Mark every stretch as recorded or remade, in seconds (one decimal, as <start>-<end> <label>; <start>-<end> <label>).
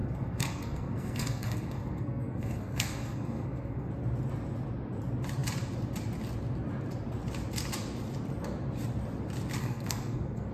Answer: 0.0-3.9 remade; 3.9-9.6 recorded; 9.6-10.5 remade